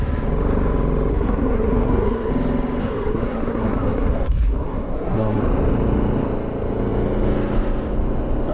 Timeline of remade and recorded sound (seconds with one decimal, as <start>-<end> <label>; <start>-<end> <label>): 0.0-1.1 recorded; 1.1-2.3 remade; 2.3-2.8 recorded; 2.8-5.4 remade; 5.4-8.5 recorded